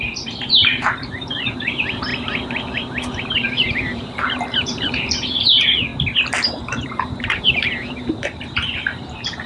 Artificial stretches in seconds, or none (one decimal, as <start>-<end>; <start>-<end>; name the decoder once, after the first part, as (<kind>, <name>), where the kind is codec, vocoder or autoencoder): 0.0-2.1 (vocoder, BigVGAN v2); 3.3-5.9; 6.9-9.5